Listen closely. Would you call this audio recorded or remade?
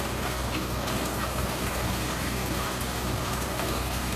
remade